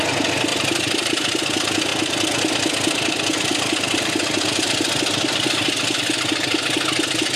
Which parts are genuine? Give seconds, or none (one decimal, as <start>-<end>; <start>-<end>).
0.0-7.4